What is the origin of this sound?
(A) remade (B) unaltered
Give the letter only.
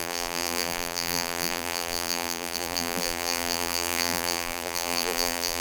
A